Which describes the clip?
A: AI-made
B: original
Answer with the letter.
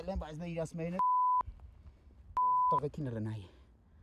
B